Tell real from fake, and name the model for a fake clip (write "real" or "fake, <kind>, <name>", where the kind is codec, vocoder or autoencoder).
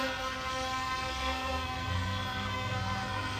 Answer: fake, codec, SNAC